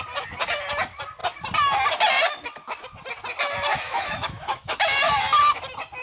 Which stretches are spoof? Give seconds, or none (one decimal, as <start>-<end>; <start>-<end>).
3.7-5.2